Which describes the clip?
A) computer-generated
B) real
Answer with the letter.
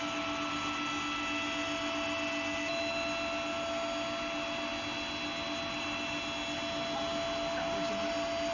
B